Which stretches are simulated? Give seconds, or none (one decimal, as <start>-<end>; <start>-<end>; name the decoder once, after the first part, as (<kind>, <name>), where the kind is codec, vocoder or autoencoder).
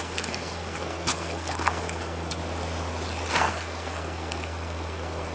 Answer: 0.0-2.4 (codec, SNAC); 3.3-5.3